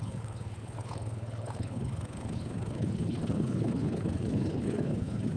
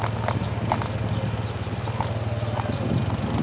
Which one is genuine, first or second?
second